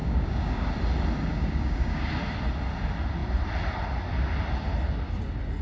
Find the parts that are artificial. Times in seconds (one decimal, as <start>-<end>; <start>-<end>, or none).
0.0-0.7; 1.3-2.1